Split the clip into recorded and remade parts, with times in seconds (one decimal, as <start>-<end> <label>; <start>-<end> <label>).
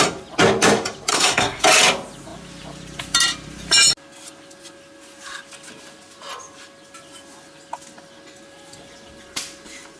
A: 0.0-1.1 recorded; 1.1-1.6 remade; 1.6-10.0 recorded